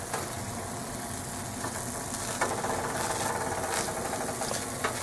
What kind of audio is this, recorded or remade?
recorded